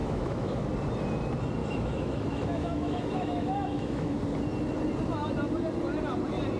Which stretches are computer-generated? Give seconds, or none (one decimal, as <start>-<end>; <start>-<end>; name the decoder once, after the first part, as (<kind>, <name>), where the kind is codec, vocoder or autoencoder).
0.0-0.6 (autoencoder, DAC-VAE); 1.6-4.2

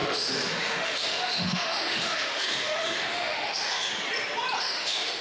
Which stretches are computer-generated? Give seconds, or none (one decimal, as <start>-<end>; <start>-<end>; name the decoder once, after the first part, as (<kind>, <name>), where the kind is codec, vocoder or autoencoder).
0.0-3.9 (autoencoder, DAC-VAE); 4.6-5.2

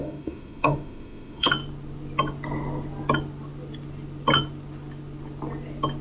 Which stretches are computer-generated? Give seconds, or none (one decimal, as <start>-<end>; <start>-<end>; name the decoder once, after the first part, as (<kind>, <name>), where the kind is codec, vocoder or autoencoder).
0.0-1.5 (autoencoder, DAC-VAE)

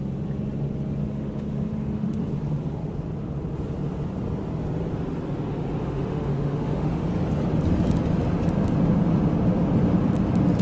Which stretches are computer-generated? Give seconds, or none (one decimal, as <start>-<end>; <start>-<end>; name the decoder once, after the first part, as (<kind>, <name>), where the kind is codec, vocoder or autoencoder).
1.0-2.2 (autoencoder, DAC-VAE); 5.8-7.1

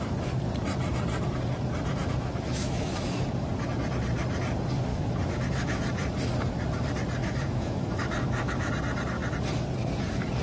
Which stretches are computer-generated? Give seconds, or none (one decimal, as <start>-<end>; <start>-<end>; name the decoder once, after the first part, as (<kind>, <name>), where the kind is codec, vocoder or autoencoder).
2.0-3.1 (autoencoder, DAC-VAE); 4.9-5.8; 7.2-8.7